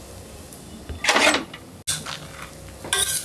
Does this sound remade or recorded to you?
recorded